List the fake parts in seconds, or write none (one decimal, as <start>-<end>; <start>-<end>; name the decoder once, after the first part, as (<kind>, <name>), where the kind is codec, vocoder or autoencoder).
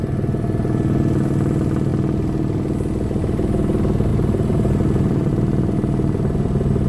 4.1-5.3 (vocoder, BigVGAN v2)